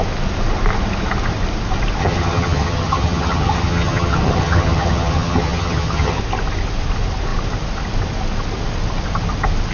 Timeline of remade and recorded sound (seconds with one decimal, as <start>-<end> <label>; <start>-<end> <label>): 0.0-2.0 recorded; 2.0-6.2 remade; 6.2-9.7 recorded